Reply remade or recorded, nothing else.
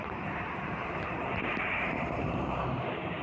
remade